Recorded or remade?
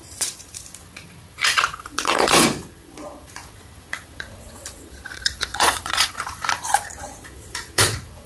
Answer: remade